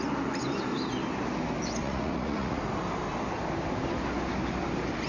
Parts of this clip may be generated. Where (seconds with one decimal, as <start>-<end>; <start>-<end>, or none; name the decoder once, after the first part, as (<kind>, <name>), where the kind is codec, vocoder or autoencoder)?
1.8-2.6 (vocoder, Vocos)